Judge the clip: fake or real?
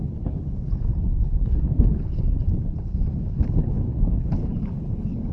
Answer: fake